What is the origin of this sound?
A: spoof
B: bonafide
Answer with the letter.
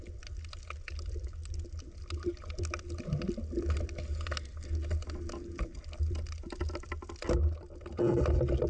B